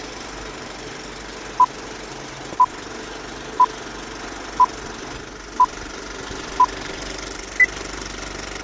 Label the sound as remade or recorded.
recorded